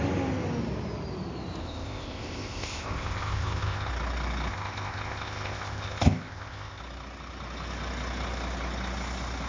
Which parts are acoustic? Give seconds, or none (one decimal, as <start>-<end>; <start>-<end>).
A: 0.0-1.6; 3.9-4.5; 6.8-9.5